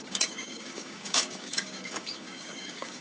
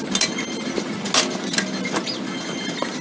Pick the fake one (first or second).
first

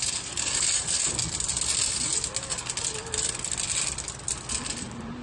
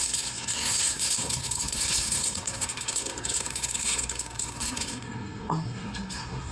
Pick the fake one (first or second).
second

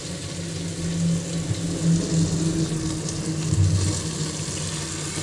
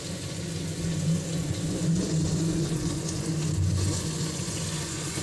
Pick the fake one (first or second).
second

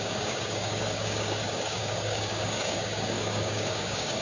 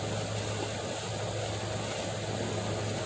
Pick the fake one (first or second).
first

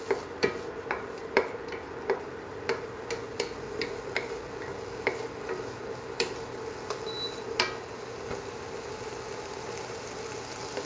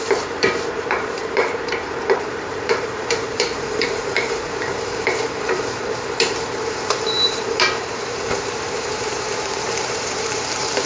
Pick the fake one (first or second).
second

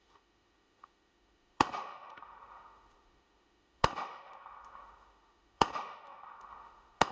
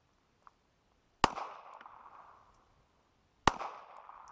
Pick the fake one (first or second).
first